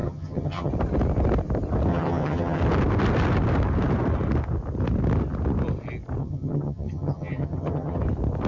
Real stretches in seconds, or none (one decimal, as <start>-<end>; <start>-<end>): 0.7-1.9; 2.6-6.2; 8.0-8.5